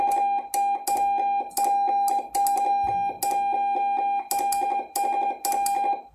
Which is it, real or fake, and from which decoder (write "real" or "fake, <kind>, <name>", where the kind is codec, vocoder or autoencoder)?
real